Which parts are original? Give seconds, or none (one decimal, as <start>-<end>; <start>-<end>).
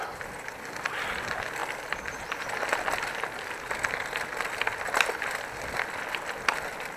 0.0-1.6; 2.4-7.0